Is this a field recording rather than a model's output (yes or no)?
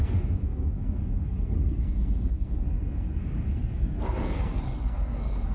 no